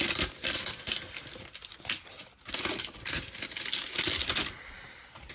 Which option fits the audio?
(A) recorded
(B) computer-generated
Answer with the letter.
A